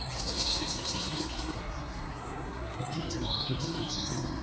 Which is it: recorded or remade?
remade